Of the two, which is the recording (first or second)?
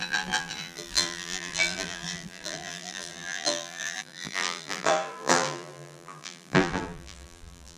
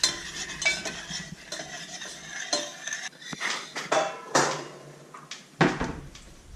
second